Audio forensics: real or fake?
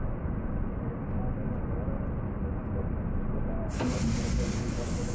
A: real